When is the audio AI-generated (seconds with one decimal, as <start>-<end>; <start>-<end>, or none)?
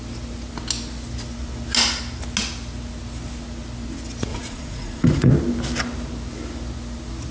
4.3-5.3